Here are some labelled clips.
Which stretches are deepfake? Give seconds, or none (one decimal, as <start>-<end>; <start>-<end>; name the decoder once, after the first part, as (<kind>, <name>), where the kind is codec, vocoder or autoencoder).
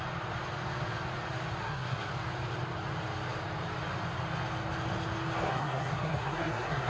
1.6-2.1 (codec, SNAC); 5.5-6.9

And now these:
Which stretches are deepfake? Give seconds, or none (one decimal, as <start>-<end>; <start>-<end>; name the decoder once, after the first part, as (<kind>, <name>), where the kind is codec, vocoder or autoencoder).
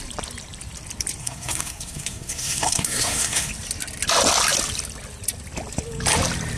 1.2-3.5 (codec, SNAC)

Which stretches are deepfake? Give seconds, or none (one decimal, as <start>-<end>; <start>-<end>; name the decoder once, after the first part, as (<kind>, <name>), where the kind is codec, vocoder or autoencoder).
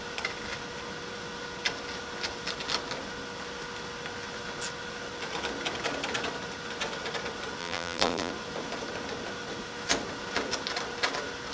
7.6-8.3 (vocoder, BigVGAN v2)